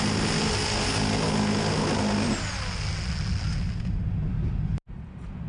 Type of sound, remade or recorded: recorded